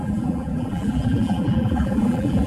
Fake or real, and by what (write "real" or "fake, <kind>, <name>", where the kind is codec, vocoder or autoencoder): fake, vocoder, BigVGAN v2